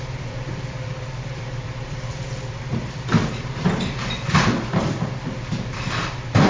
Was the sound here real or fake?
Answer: fake